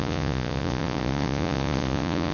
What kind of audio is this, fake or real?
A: fake